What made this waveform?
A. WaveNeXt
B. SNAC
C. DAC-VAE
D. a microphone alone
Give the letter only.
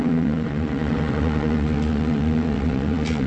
A